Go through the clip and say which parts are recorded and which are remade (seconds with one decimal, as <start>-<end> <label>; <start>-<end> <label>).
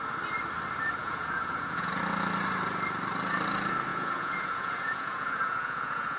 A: 0.0-1.0 recorded; 1.0-2.0 remade; 2.0-3.9 recorded; 3.9-6.2 remade